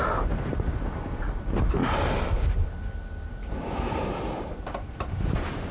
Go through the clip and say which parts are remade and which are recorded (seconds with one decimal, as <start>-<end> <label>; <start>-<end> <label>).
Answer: 0.0-1.8 remade; 1.8-3.3 recorded; 3.3-5.7 remade